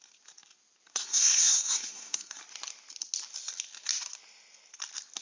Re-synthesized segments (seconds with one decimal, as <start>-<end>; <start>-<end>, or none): 0.9-2.4